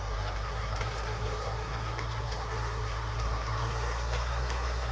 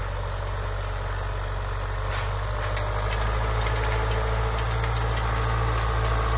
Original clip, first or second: second